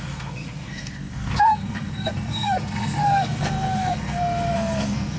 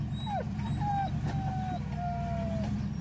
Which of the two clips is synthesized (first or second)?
first